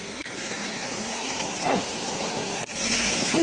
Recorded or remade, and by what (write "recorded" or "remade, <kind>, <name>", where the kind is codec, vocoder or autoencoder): remade, codec, SNAC